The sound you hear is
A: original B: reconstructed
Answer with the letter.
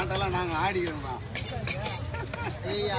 A